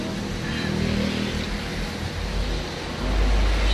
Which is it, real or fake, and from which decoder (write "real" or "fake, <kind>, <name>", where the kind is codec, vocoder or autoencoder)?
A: real